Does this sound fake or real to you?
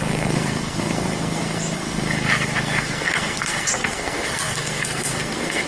fake